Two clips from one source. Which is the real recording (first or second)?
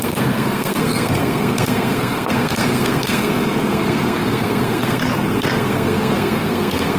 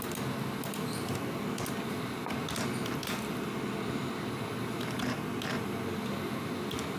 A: second